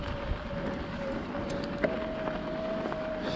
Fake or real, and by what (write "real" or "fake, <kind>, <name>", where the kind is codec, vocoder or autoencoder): real